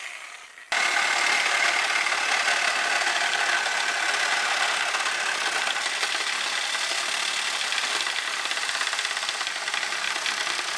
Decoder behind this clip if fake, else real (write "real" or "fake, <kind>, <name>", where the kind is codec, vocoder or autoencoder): real